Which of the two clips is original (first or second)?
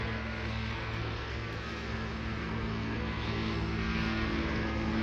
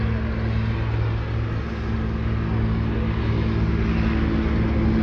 second